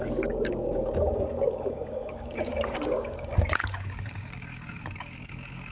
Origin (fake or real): fake